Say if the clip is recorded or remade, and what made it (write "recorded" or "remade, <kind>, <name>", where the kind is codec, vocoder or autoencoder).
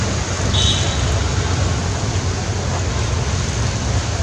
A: recorded